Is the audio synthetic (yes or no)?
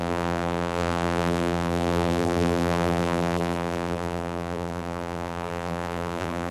yes